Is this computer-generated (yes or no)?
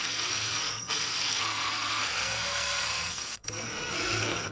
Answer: yes